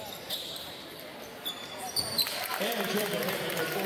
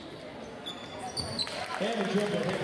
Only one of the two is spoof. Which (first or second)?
first